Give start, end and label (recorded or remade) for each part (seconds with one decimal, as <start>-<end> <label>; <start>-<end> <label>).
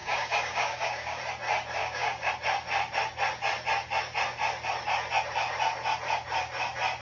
0.0-1.2 remade; 1.2-1.8 recorded; 1.8-2.3 remade; 2.3-7.0 recorded